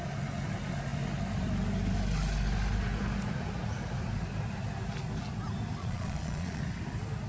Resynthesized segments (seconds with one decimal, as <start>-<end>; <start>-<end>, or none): 5.8-6.6